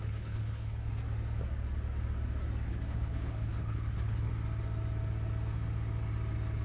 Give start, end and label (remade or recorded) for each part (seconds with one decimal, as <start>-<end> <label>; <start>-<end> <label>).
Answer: 0.0-0.9 remade; 0.9-2.7 recorded; 2.7-4.3 remade; 4.3-6.6 recorded